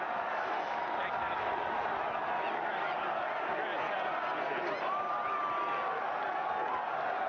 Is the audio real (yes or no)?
yes